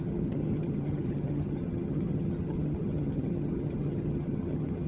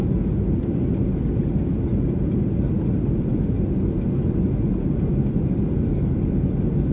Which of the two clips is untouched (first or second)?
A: second